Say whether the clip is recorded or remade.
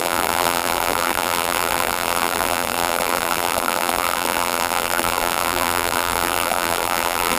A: remade